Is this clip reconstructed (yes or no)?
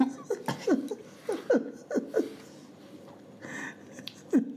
no